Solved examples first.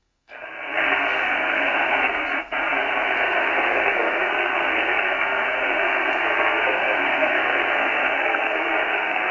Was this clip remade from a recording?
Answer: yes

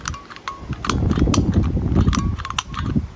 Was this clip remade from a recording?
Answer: no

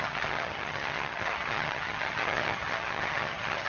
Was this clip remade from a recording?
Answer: yes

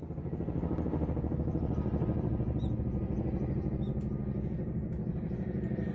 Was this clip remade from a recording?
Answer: no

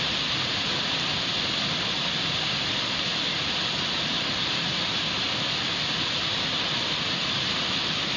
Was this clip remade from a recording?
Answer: no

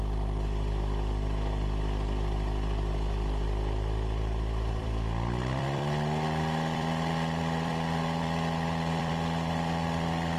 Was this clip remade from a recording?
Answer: yes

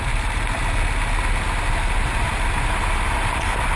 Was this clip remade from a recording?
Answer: no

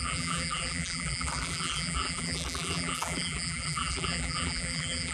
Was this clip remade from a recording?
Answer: yes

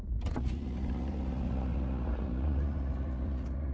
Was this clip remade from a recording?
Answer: yes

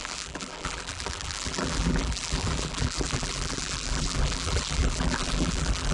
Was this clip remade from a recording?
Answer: yes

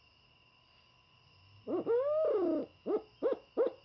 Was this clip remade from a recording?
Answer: no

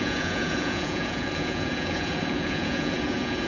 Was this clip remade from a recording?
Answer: yes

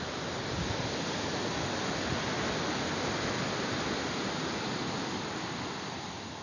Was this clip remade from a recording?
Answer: no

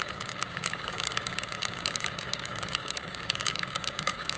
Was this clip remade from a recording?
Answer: yes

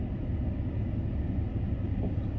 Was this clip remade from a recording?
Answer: no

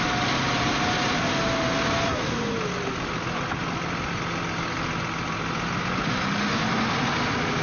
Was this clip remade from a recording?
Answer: no